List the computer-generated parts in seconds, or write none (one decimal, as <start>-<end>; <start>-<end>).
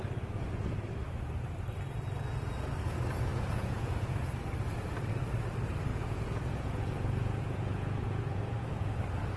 3.3-4.3; 5.9-9.0